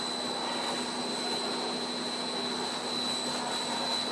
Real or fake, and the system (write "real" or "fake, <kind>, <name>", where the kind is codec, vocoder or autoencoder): real